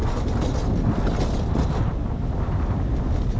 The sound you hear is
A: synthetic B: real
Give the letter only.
B